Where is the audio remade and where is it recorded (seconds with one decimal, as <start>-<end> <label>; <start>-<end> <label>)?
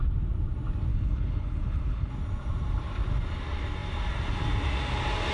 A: 0.0-0.9 recorded; 0.9-2.1 remade; 2.1-5.3 recorded